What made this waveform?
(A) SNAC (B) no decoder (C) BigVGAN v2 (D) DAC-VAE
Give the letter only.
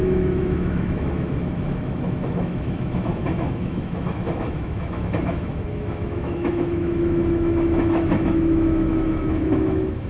D